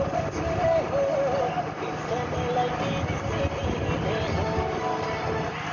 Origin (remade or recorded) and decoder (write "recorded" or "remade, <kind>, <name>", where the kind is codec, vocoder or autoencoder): recorded